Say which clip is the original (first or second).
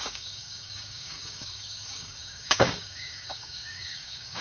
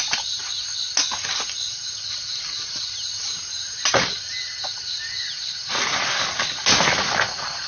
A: second